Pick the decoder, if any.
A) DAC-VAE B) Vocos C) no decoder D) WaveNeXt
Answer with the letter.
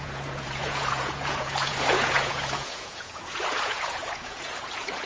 B